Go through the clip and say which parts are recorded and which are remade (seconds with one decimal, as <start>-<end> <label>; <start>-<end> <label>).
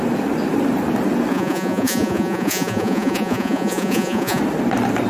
0.0-1.3 recorded; 1.3-4.4 remade; 4.4-5.1 recorded